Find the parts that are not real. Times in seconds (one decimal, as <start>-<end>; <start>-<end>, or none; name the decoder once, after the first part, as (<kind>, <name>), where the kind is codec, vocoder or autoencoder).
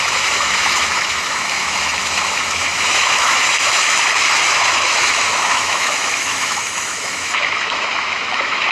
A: 0.0-8.7 (autoencoder, DAC-VAE)